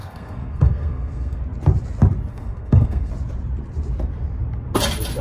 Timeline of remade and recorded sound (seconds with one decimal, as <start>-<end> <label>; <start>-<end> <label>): 0.0-1.4 remade; 1.4-2.3 recorded; 2.3-3.1 remade; 3.1-5.2 recorded